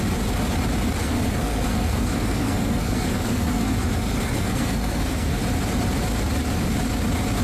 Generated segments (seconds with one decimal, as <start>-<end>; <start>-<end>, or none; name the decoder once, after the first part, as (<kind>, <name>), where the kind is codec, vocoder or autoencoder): 1.0-5.4 (codec, SNAC)